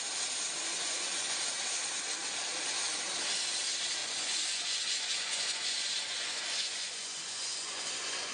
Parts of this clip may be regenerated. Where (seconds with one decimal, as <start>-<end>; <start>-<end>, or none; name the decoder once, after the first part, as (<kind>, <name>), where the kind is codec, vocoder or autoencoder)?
0.6-1.4 (vocoder, Vocos); 4.0-8.3